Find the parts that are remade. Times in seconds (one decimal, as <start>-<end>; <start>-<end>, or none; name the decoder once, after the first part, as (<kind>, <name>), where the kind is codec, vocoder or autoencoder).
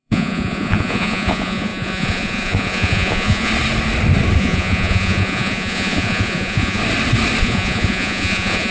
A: 0.0-3.5 (vocoder, Vocos); 4.4-6.8; 7.4-8.7